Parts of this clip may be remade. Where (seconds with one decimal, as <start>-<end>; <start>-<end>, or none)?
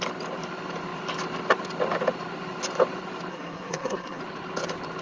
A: 3.3-4.2